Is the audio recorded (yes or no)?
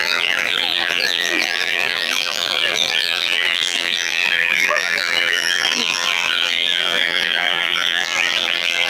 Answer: no